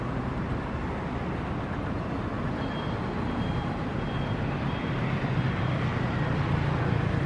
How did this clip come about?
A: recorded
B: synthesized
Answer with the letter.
A